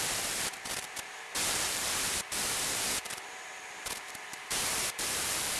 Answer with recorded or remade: remade